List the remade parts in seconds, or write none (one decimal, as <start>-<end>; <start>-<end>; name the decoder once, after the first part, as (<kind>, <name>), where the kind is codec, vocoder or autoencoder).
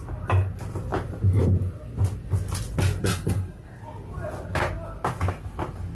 3.0-3.8 (codec, SNAC)